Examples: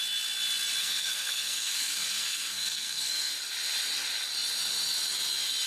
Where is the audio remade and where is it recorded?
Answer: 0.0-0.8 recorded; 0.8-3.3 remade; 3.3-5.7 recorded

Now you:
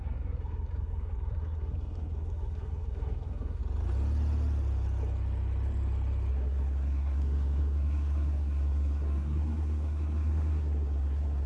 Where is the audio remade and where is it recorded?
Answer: 0.0-3.6 remade; 3.6-6.3 recorded; 6.3-11.5 remade

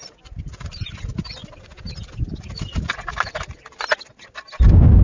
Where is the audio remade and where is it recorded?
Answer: 0.0-5.0 recorded

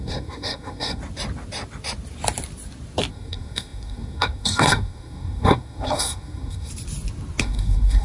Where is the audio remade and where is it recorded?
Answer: 0.0-1.0 remade; 1.0-3.1 recorded; 3.1-6.7 remade; 6.7-7.4 recorded; 7.4-8.0 remade